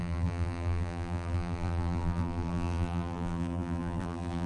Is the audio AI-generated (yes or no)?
yes